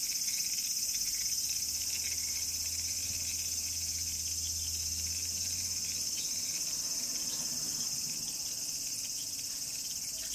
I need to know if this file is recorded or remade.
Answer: recorded